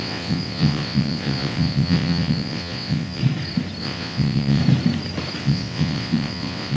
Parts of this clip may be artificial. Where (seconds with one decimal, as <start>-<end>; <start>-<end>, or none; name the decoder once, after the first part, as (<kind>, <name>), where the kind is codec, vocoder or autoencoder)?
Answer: 0.0-3.2 (vocoder, WaveNeXt); 3.8-4.6; 5.4-6.8